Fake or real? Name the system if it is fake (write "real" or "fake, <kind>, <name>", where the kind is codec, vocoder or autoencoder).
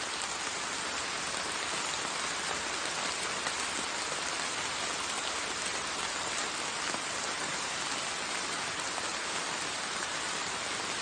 real